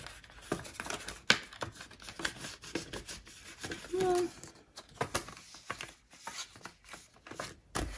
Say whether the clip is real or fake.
real